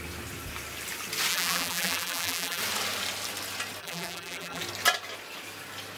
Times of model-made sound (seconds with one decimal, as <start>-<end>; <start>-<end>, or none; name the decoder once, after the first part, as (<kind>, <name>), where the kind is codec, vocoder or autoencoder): 1.3-2.6 (vocoder, BigVGAN v2); 3.8-4.6